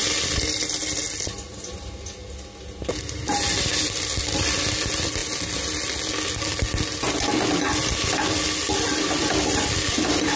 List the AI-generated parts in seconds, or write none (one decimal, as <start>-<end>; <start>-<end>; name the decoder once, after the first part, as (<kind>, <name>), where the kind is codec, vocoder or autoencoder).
9.2-9.9 (vocoder, BigVGAN v2)